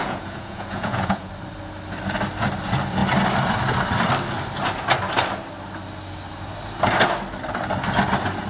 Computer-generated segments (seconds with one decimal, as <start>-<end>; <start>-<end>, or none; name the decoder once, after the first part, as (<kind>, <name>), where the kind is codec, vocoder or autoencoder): 0.0-1.3 (vocoder, Vocos)